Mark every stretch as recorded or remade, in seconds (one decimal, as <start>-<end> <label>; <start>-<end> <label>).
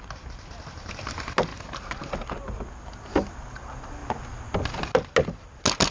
0.0-5.9 recorded